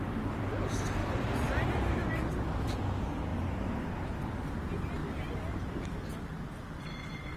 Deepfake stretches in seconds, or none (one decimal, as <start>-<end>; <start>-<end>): 1.0-2.1; 5.0-5.9